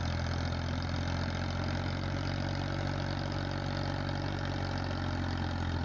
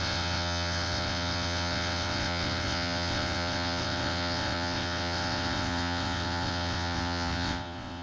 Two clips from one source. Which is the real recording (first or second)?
first